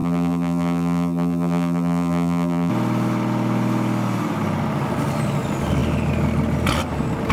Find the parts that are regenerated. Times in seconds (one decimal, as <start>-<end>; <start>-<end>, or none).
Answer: 0.0-2.7